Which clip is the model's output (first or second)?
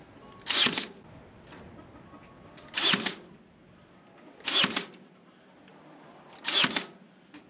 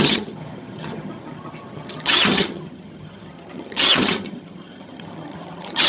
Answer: second